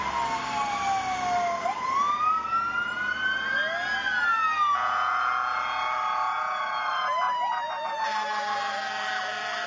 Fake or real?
real